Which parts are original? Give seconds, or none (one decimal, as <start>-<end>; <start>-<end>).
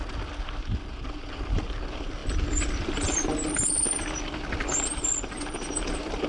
0.0-6.3